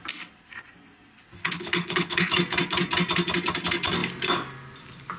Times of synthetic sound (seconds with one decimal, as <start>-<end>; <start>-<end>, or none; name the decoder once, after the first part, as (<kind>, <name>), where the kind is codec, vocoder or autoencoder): 1.4-2.3 (codec, HILCodec)